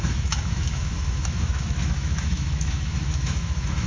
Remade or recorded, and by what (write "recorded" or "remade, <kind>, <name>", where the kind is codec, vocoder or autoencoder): remade, autoencoder, DAC-VAE